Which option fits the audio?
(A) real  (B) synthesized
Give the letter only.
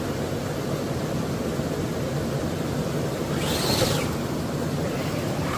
A